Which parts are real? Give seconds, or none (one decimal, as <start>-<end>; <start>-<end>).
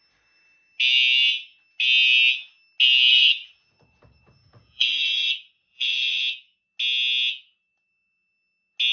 0.0-3.1; 6.2-8.9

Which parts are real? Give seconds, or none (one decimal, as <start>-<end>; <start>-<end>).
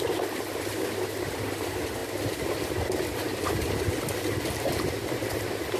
2.0-3.1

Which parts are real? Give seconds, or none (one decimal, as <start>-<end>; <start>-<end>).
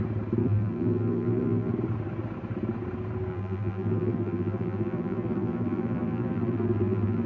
0.0-0.4; 1.7-3.3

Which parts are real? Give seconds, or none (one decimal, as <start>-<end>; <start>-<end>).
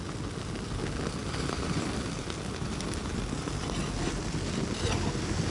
0.0-1.2; 3.1-5.5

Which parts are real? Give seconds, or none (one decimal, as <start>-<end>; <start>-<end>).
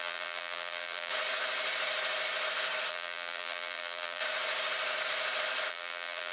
1.1-2.9; 4.2-5.7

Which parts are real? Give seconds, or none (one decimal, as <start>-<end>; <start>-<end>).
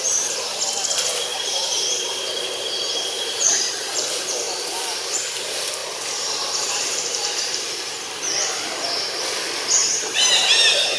0.0-1.3; 4.1-5.8; 8.2-9.8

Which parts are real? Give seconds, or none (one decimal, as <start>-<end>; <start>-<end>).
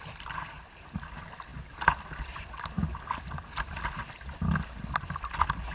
0.0-5.7